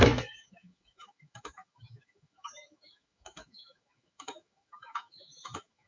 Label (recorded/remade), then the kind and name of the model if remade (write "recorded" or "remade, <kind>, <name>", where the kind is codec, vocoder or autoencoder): remade, autoencoder, DAC-VAE